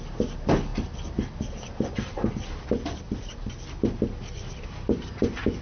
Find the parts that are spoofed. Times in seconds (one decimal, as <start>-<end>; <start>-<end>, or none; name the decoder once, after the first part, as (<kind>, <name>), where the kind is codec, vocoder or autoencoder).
none